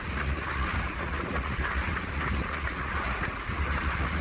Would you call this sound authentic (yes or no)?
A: no